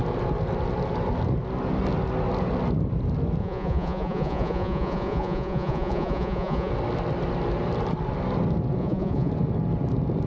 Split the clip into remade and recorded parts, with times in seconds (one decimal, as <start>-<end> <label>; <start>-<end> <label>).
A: 0.0-3.4 recorded; 3.4-6.7 remade; 6.7-8.8 recorded; 8.8-9.3 remade; 9.3-10.3 recorded